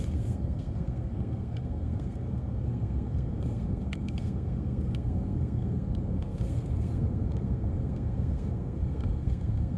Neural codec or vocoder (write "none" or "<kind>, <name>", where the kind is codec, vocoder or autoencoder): codec, SNAC